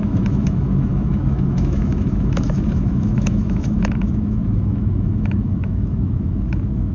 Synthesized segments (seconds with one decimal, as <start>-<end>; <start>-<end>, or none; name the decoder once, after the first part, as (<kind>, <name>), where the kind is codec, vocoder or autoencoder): 0.0-6.9 (autoencoder, DAC-VAE)